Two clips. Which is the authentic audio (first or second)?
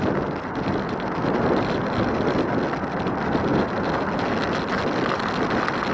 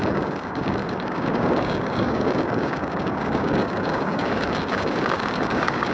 first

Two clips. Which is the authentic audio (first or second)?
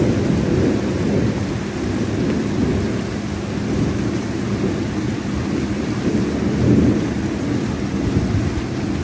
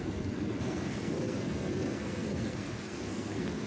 first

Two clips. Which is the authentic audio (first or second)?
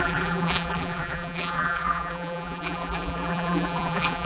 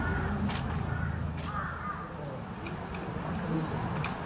second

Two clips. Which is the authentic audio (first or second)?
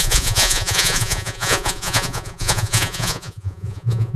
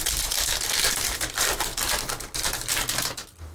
second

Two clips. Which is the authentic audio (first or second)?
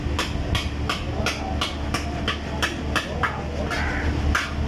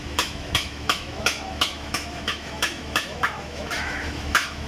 first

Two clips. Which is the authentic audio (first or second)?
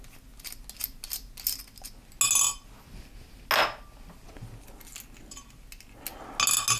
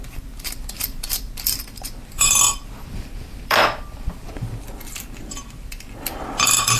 first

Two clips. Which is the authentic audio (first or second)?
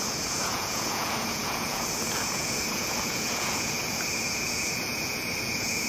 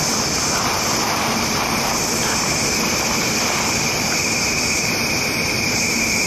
second